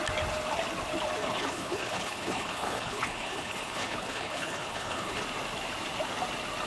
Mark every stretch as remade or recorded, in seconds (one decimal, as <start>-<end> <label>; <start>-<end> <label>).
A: 0.0-1.2 recorded; 1.2-5.2 remade; 5.2-6.7 recorded